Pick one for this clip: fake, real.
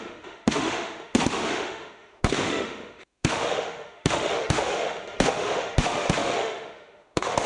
fake